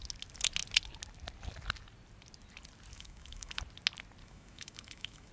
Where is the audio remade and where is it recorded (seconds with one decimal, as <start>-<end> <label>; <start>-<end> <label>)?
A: 0.0-2.9 recorded; 2.9-3.6 remade; 3.6-4.2 recorded; 4.2-5.3 remade